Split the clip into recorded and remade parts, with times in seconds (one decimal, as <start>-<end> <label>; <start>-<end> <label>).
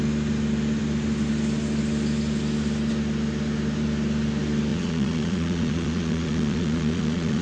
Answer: 0.0-4.7 recorded; 4.7-7.4 remade